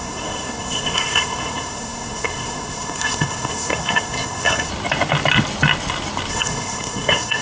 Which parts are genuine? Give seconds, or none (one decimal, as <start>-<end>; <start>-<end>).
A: 4.7-6.3